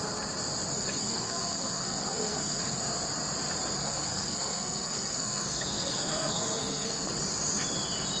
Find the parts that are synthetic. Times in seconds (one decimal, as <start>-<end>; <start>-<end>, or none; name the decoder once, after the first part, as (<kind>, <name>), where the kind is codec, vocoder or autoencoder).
0.7-2.8 (codec, SNAC); 3.8-7.1

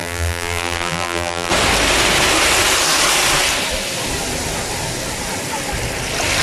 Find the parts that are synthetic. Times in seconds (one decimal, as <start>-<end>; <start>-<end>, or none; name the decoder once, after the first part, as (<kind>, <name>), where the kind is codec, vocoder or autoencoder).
0.0-1.5 (vocoder, BigVGAN v2)

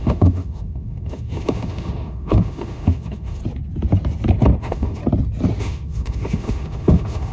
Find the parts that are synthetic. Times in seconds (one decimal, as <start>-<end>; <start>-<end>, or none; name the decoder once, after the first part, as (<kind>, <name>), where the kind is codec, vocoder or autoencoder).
0.0-3.4 (autoencoder, DAC-VAE); 4.6-5.0; 5.6-7.3